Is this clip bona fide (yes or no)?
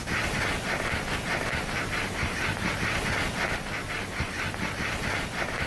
yes